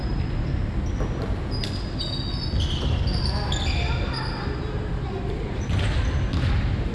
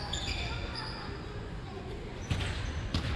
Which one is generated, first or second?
second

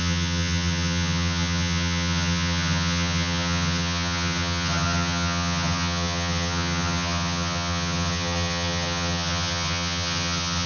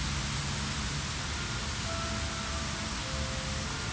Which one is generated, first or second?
first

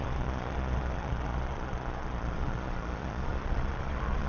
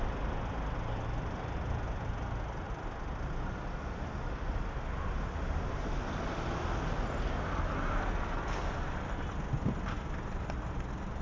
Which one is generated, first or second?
first